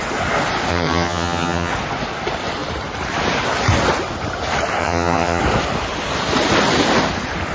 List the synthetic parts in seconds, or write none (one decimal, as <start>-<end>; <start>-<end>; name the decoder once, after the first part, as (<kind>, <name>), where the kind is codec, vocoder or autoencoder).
0.7-1.7 (vocoder, HiFi-GAN); 4.8-5.4